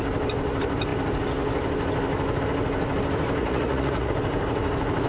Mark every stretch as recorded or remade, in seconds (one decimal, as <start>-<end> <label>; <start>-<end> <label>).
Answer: 0.0-3.4 recorded; 3.4-4.1 remade; 4.1-5.1 recorded